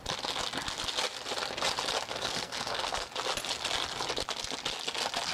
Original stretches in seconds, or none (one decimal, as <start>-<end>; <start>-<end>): 0.0-2.1; 3.1-5.3